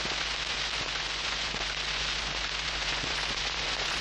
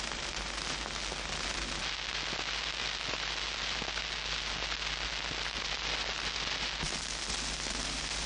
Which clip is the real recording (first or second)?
second